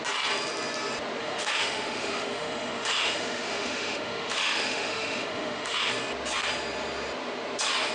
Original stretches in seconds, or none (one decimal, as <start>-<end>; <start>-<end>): 0.0-1.2; 5.9-7.9